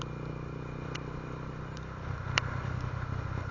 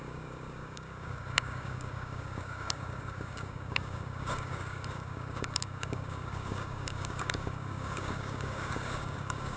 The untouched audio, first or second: first